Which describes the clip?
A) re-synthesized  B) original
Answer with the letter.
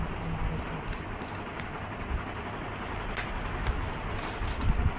B